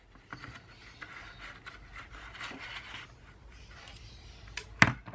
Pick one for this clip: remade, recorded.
recorded